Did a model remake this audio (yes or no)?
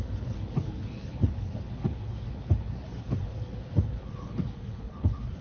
yes